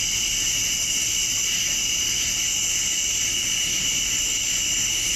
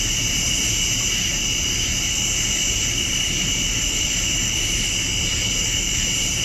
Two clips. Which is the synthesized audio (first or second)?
second